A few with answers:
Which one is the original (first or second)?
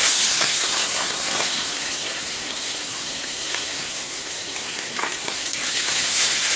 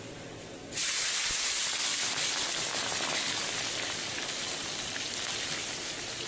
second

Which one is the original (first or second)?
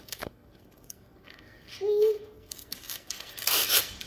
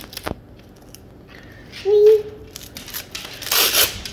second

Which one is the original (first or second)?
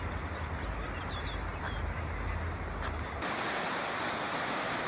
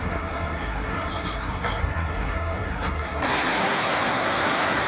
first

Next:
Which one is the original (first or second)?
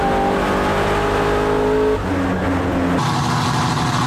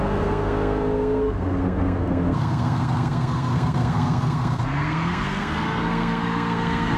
first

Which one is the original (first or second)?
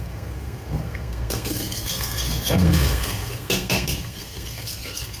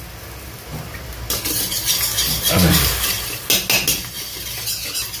second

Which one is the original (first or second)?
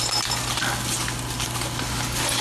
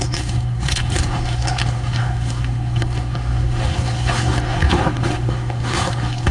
first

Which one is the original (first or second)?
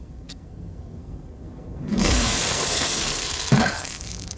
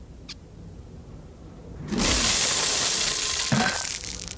second